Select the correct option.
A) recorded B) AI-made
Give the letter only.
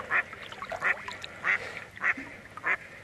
A